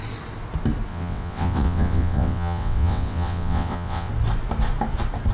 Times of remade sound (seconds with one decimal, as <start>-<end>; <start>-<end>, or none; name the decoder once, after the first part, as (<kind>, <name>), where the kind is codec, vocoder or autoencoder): 0.9-4.1 (vocoder, WaveNeXt)